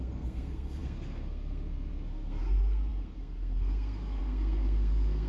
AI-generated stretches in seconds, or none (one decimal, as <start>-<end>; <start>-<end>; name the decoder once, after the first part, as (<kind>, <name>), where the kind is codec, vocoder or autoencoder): 0.0-5.3 (codec, SNAC)